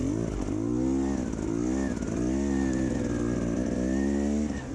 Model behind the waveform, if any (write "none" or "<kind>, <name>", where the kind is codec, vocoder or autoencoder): none